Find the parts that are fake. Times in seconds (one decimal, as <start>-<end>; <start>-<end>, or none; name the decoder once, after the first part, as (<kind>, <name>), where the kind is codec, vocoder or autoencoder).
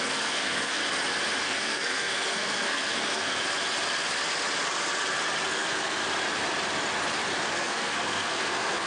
0.0-0.8 (codec, SNAC); 1.4-3.4; 5.5-6.0; 7.5-8.9